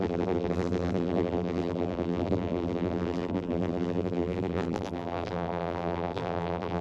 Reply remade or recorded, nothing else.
remade